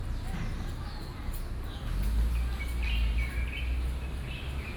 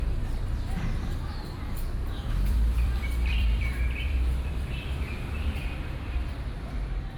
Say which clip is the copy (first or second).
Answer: second